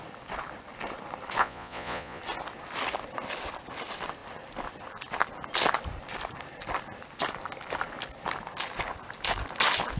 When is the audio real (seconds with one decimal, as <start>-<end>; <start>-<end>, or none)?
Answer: 0.0-1.4; 2.2-10.0